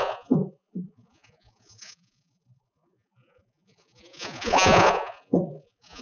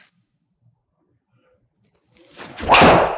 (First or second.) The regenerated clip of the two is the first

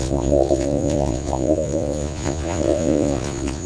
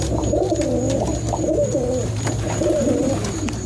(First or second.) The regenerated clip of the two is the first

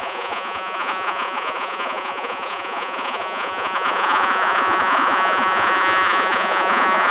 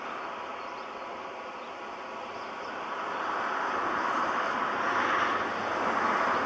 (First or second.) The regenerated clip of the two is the first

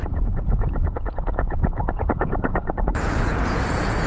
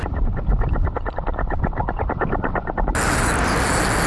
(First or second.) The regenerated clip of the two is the first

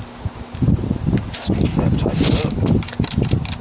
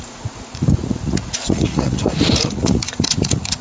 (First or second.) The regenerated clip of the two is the second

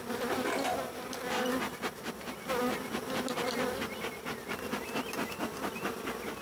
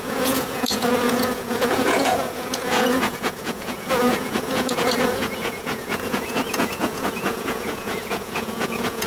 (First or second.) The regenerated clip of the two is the second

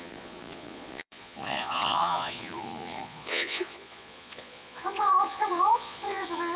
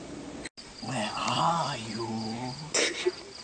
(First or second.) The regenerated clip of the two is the first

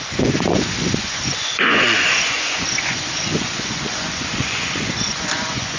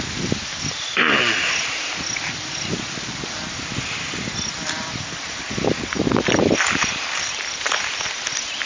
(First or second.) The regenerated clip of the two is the first